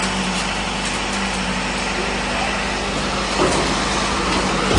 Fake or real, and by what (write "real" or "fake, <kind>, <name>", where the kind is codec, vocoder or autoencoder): real